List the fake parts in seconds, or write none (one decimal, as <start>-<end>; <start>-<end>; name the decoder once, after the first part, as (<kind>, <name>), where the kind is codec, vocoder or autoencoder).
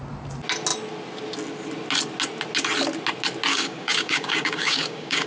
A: 3.5-5.3 (codec, DAC)